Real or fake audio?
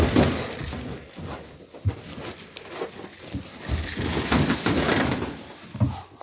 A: real